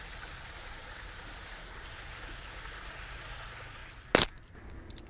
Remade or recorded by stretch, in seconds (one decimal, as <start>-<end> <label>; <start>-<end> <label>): 0.0-5.1 recorded